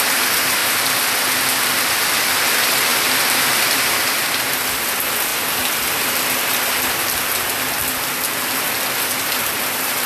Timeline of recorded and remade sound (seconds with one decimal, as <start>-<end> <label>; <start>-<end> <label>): 0.0-0.6 remade; 0.6-1.6 recorded; 1.6-5.3 remade; 5.3-9.1 recorded; 9.1-10.1 remade